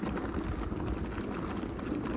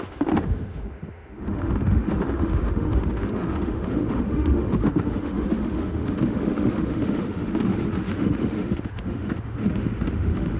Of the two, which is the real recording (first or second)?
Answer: first